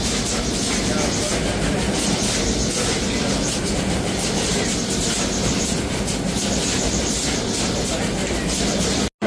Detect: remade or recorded recorded